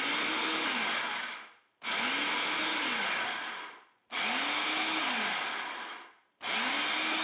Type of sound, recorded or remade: recorded